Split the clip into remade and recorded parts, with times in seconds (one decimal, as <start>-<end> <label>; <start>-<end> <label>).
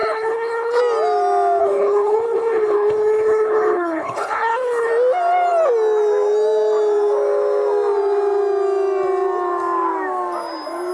0.0-0.8 remade; 0.8-1.6 recorded; 1.6-4.9 remade; 4.9-10.9 recorded